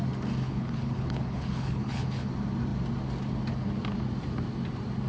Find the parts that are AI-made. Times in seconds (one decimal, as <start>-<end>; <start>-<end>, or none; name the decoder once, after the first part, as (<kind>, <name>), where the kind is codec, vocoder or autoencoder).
0.4-2.3 (codec, HILCodec)